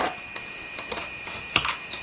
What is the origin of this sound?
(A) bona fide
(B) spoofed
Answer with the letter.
A